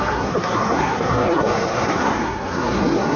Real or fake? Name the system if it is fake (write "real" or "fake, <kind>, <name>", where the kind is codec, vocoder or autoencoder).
fake, codec, SNAC